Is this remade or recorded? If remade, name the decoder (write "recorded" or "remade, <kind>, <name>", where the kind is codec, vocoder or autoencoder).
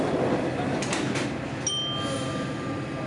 recorded